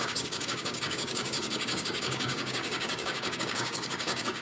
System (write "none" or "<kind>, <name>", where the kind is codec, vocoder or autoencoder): codec, DAC